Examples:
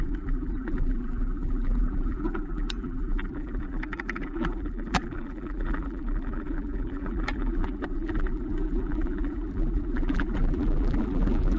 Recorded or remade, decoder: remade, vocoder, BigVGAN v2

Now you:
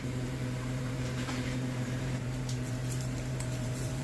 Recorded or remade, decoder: remade, vocoder, BigVGAN v2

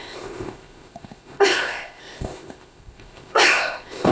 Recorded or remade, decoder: remade, codec, ZipCodec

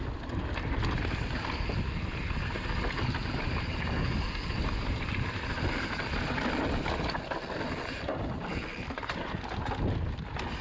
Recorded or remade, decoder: recorded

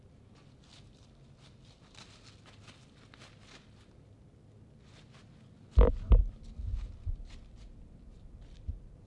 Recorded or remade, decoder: recorded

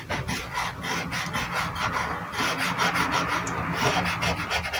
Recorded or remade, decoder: recorded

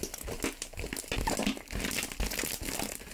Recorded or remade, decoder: recorded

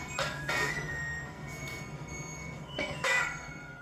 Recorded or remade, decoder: remade, codec, SNAC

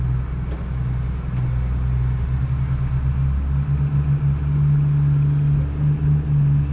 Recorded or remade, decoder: recorded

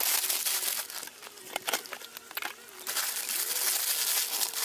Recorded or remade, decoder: recorded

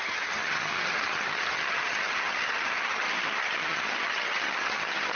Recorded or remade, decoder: remade, vocoder, HiFi-GAN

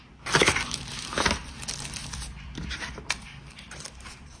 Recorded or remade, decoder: recorded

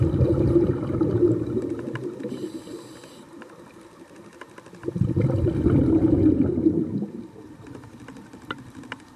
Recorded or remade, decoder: recorded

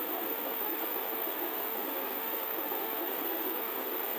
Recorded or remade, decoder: remade, autoencoder, DAC-VAE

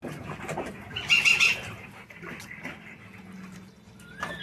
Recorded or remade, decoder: recorded